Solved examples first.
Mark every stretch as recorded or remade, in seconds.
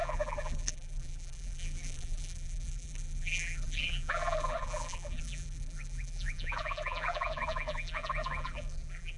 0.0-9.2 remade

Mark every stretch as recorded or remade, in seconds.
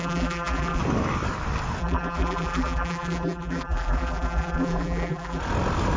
0.0-0.8 remade; 0.8-1.8 recorded; 1.8-5.4 remade; 5.4-6.0 recorded